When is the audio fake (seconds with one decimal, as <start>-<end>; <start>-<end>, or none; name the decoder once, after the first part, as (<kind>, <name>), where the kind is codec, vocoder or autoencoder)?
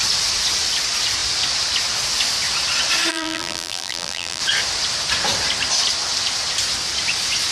3.1-4.4 (vocoder, BigVGAN v2)